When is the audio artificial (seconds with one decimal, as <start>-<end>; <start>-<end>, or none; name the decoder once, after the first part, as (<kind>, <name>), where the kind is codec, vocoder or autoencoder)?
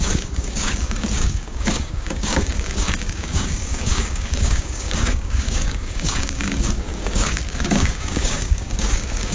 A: 0.0-9.3 (codec, DAC)